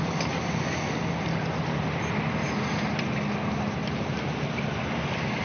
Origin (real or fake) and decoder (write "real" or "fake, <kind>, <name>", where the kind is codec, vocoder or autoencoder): real